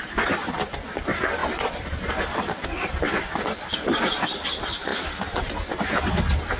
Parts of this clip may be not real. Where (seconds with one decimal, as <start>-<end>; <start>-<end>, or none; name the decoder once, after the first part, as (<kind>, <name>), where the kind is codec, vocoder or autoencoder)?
0.0-1.4 (vocoder, BigVGAN v2); 3.7-4.9; 6.0-6.6

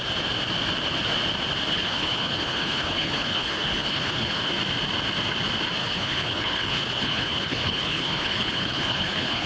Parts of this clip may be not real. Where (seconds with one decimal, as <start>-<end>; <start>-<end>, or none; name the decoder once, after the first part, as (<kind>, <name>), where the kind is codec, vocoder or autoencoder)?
1.7-4.5 (codec, HILCodec); 5.8-9.5